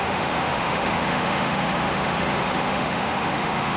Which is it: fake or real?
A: fake